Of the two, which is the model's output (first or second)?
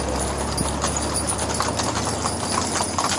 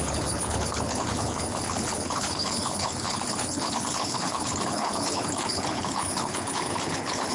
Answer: second